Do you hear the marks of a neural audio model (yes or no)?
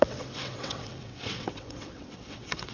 yes